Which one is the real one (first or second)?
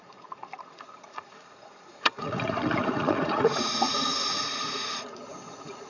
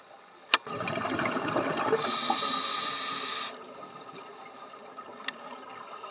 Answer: second